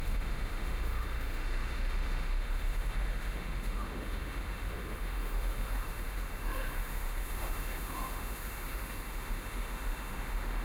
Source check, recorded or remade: remade